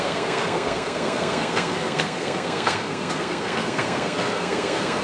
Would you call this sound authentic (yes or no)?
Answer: no